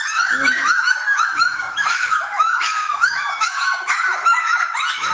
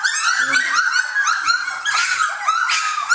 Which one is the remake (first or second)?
first